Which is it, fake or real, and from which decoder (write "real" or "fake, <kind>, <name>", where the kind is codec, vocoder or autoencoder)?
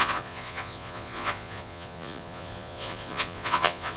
fake, vocoder, Vocos